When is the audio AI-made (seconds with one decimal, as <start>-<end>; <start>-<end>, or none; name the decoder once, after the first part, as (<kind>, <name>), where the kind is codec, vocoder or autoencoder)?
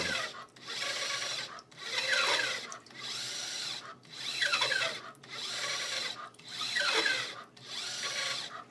none